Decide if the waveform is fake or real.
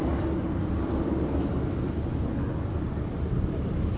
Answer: real